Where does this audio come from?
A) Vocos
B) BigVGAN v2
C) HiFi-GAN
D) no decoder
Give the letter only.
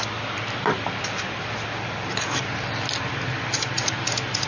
B